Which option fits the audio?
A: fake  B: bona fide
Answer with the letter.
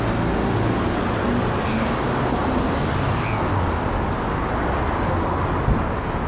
B